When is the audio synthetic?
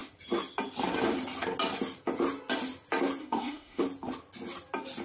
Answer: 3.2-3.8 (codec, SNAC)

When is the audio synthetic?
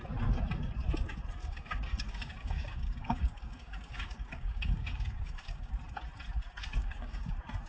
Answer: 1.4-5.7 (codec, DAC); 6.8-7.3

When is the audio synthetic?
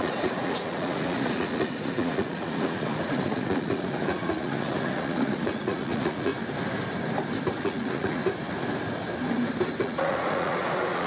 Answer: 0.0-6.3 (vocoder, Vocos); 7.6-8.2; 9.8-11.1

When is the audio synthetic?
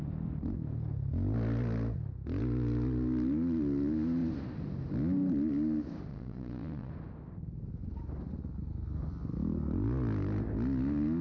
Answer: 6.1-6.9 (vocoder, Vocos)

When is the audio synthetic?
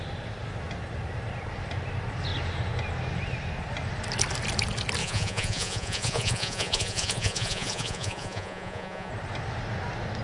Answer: 5.0-9.1 (vocoder, Vocos)